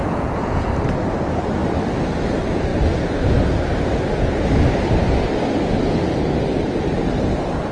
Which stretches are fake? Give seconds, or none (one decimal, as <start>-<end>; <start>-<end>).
0.0-0.7